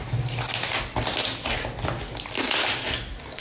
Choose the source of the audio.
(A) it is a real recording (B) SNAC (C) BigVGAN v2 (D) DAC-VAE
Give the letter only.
A